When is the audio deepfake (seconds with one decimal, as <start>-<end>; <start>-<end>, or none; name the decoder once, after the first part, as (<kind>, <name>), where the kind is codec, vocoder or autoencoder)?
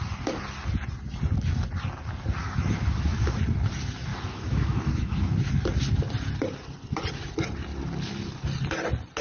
2.4-3.4 (autoencoder, DAC-VAE); 4.1-5.5